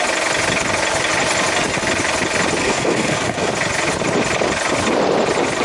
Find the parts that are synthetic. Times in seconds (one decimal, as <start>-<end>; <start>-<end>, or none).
2.6-3.5